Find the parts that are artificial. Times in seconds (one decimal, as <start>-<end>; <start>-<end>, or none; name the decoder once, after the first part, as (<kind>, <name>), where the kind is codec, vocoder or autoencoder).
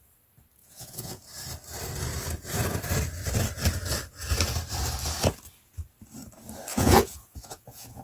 0.6-1.2 (vocoder, Vocos); 6.7-8.0